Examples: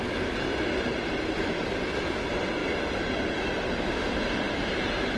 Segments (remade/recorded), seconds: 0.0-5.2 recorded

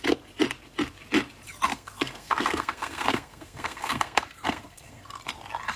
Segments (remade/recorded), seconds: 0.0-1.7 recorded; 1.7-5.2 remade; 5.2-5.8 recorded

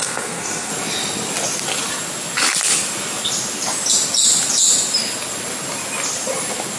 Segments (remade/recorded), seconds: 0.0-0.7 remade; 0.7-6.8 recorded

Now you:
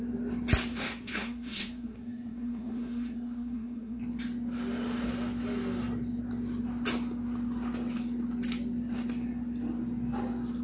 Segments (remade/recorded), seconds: 0.0-0.7 recorded; 0.7-4.0 remade; 4.0-10.6 recorded

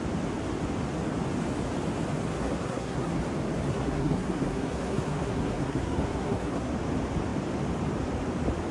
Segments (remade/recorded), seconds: 0.0-2.3 recorded; 2.3-3.2 remade; 3.2-3.7 recorded; 3.7-6.7 remade; 6.7-8.7 recorded